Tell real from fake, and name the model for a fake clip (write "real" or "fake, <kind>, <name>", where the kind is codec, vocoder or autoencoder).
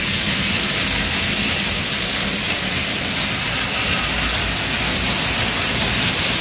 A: real